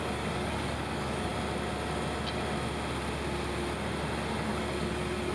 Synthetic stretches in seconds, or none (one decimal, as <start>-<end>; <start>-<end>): 0.0-1.3; 4.5-5.3